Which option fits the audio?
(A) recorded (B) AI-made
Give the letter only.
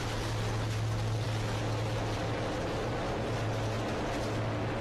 A